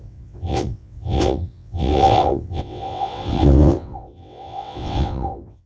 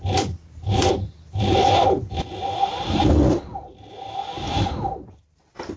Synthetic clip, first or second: first